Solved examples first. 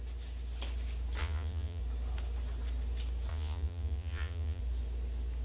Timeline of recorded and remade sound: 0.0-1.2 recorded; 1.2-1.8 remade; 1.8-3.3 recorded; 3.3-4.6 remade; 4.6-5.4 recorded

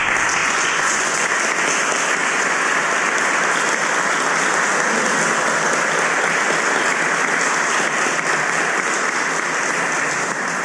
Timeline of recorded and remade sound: 0.0-0.4 recorded; 0.4-1.3 remade; 1.3-2.2 recorded; 2.2-2.8 remade; 2.8-10.6 recorded

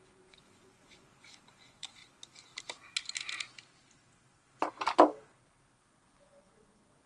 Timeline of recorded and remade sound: 0.0-2.0 remade; 2.0-5.9 recorded; 5.9-7.1 remade

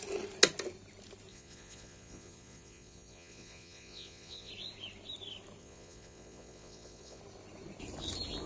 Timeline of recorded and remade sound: 0.0-1.3 recorded; 1.3-4.5 remade; 4.5-5.6 recorded; 5.6-7.2 remade; 7.2-8.5 recorded

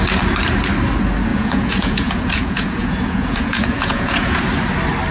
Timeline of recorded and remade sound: 0.0-1.3 recorded; 1.3-4.4 remade; 4.4-5.1 recorded

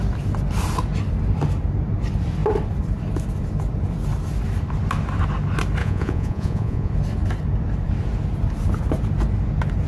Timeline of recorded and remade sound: 0.0-5.8 recorded; 5.8-6.9 remade; 6.9-9.9 recorded